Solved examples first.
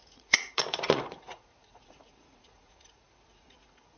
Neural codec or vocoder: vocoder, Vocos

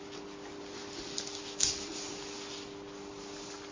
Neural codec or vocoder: none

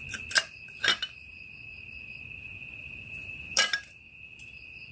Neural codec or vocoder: vocoder, BigVGAN v2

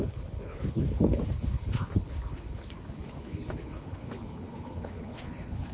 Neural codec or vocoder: codec, HILCodec